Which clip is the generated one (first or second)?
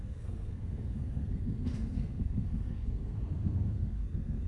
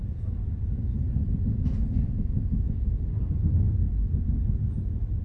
first